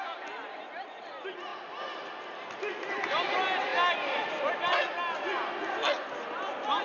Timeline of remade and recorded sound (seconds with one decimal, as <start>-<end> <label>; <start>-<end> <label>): 0.0-6.8 recorded